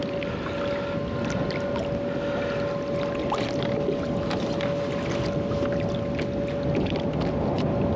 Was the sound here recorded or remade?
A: recorded